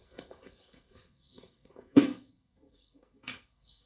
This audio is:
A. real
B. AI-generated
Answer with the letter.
B